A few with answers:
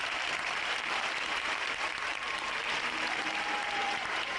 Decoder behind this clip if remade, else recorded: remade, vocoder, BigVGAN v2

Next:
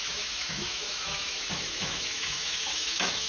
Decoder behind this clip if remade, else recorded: remade, autoencoder, DAC-VAE